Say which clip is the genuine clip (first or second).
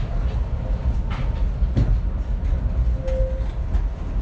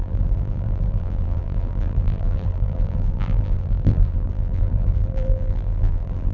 first